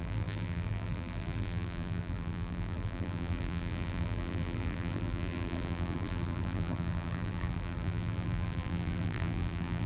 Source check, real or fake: fake